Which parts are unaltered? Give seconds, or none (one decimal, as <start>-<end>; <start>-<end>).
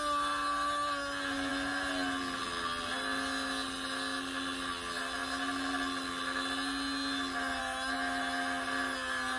0.0-9.4